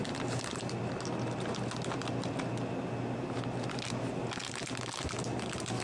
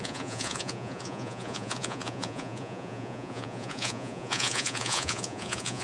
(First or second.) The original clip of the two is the first